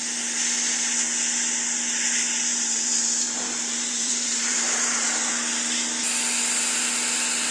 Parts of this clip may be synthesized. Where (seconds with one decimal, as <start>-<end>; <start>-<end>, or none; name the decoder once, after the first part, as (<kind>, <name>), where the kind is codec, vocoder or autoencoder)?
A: 2.5-5.3 (vocoder, BigVGAN v2)